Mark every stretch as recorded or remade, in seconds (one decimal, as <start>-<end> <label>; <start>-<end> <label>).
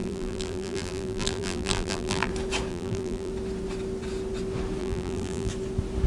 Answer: 0.0-2.3 remade; 2.3-2.7 recorded; 2.7-3.3 remade; 3.3-4.8 recorded; 4.8-5.5 remade; 5.5-6.1 recorded